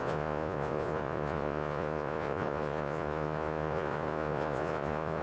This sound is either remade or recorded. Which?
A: remade